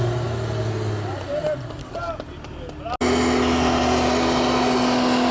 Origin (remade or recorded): recorded